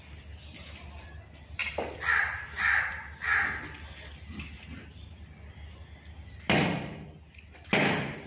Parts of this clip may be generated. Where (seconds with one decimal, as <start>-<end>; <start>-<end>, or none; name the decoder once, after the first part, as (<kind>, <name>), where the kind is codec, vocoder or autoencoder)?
none